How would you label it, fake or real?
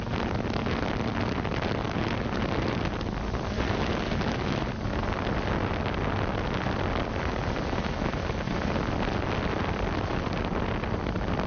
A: real